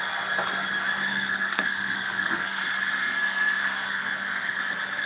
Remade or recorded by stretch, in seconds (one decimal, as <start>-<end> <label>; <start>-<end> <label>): 0.0-1.1 recorded; 1.1-2.6 remade; 2.6-3.0 recorded; 3.0-4.6 remade; 4.6-5.1 recorded